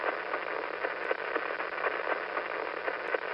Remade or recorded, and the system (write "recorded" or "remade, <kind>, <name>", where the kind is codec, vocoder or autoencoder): recorded